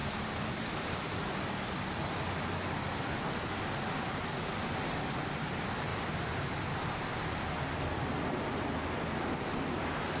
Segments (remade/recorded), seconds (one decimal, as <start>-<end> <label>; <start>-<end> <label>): 0.0-10.2 recorded